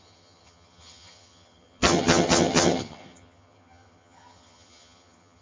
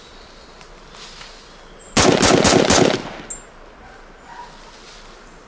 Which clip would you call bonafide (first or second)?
second